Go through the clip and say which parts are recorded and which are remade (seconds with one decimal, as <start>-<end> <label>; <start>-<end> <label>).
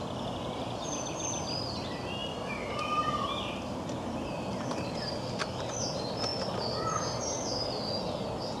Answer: 0.0-8.6 recorded